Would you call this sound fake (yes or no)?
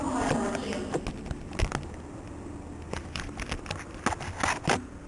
no